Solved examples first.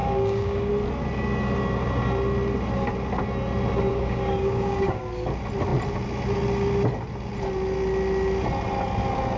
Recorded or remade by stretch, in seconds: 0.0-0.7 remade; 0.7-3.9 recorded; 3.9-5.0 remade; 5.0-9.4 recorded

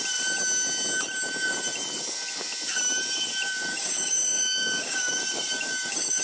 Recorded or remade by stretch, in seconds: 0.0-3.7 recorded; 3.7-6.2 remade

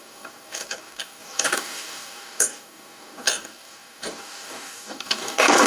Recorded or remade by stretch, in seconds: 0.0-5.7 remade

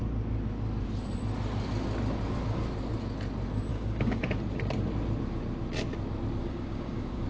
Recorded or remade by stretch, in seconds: 0.0-3.7 recorded; 3.7-4.2 remade; 4.2-6.4 recorded; 6.4-7.3 remade

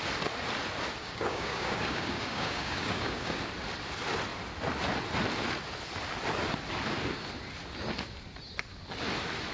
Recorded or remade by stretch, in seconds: 0.0-1.0 recorded; 1.0-3.4 remade; 3.4-9.5 recorded

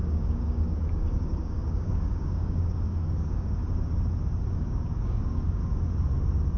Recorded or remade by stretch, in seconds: 0.0-3.6 remade; 3.6-4.5 recorded; 4.5-5.6 remade; 5.6-6.6 recorded

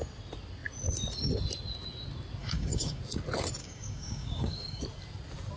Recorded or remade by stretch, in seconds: 0.0-2.4 recorded; 2.4-3.0 remade; 3.0-3.6 recorded; 3.6-4.8 remade; 4.8-5.6 recorded